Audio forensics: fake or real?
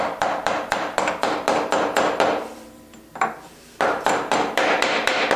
fake